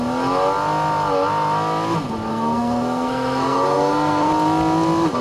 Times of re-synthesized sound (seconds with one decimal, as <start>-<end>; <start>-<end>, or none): 2.3-4.3